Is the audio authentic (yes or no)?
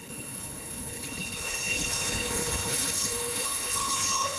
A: no